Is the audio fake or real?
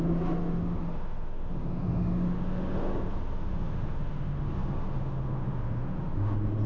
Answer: fake